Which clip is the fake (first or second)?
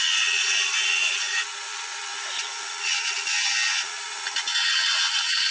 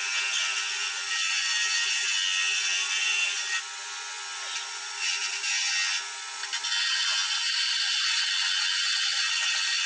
first